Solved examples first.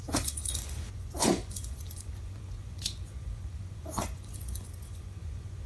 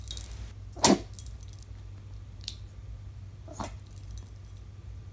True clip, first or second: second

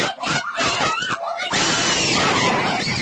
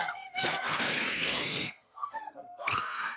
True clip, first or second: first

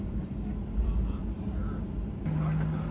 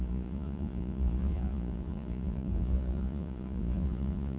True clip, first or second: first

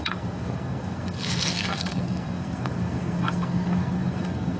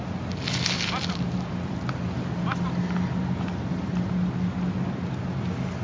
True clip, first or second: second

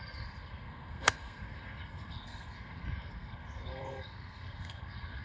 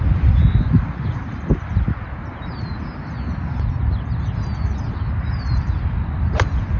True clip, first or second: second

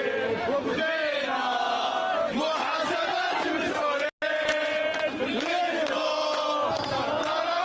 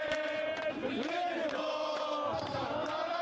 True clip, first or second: first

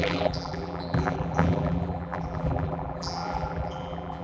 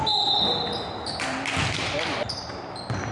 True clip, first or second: second